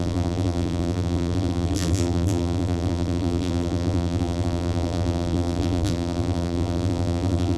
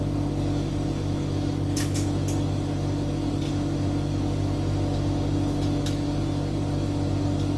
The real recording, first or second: second